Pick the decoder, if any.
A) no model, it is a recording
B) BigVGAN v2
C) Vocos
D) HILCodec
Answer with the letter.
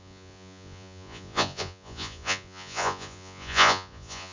C